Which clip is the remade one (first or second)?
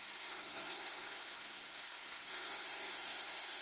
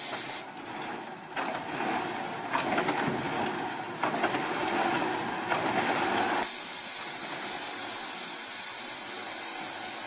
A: first